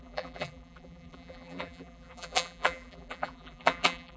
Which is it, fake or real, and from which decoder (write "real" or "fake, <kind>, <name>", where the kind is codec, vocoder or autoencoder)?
fake, vocoder, BigVGAN v2